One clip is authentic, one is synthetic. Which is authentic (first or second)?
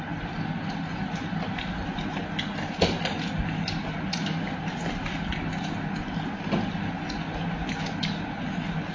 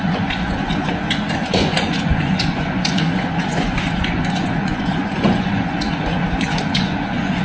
first